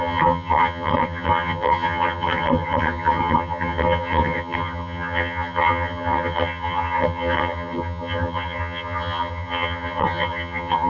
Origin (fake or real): fake